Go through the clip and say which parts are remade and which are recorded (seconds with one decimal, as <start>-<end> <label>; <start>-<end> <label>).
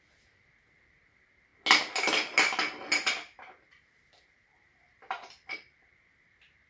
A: 0.0-1.5 remade; 1.5-4.1 recorded; 4.1-6.7 remade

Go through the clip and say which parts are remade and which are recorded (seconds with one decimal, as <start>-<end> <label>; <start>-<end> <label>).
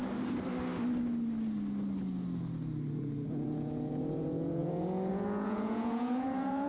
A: 0.0-2.9 recorded; 2.9-6.7 remade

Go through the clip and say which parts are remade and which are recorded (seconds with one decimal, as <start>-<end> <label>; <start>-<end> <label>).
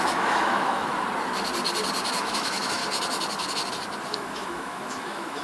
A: 0.0-0.9 remade; 0.9-2.1 recorded; 2.1-2.8 remade; 2.8-4.1 recorded; 4.1-5.4 remade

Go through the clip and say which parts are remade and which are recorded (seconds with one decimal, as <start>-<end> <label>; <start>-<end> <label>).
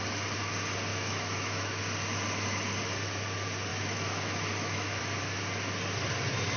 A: 0.0-0.9 recorded; 0.9-1.8 remade; 1.8-3.7 recorded; 3.7-5.0 remade; 5.0-6.6 recorded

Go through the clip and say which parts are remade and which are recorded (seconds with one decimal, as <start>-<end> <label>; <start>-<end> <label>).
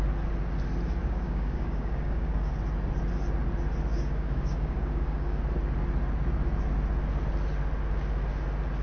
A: 0.0-1.0 recorded; 1.0-2.5 remade; 2.5-3.9 recorded; 3.9-5.4 remade; 5.4-8.8 recorded